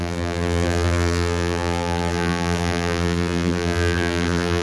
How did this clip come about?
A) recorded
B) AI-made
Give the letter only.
B